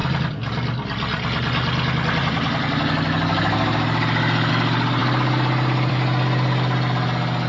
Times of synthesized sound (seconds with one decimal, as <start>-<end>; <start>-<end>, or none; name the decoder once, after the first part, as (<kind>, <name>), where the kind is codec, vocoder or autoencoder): none